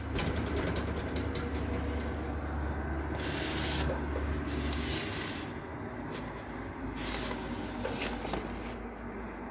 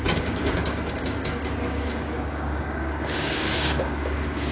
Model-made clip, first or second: second